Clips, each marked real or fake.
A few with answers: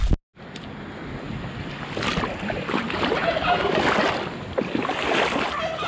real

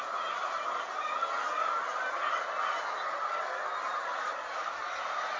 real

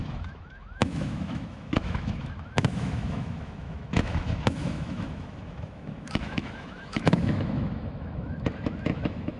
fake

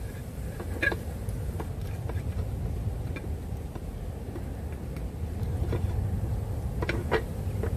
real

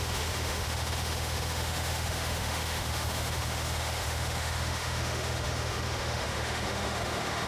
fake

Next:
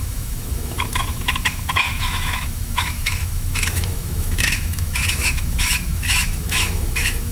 fake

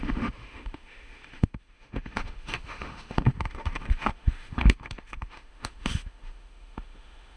fake